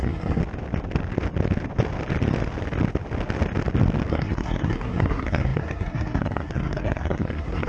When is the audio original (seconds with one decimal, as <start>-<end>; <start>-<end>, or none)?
0.4-4.1